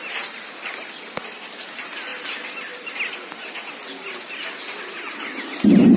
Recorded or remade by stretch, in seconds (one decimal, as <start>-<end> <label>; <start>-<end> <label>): 0.0-6.0 recorded